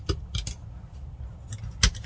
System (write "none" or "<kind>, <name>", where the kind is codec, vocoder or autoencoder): none